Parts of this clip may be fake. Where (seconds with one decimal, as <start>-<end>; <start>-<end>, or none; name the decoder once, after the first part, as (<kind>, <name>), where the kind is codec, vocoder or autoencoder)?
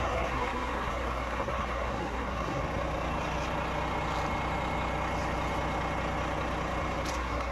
0.0-2.6 (codec, SNAC); 7.1-7.5